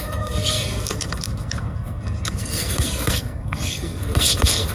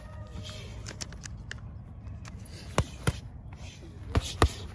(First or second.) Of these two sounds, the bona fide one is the second